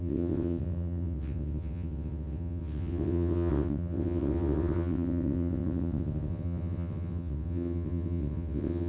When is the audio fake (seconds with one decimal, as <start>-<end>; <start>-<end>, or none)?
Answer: 0.0-8.9